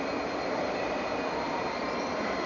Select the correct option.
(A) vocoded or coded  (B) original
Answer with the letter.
B